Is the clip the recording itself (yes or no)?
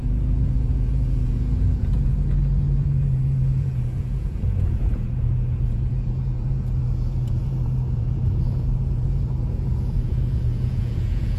no